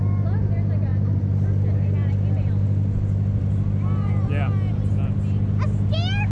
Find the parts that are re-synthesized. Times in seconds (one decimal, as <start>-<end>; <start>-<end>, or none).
none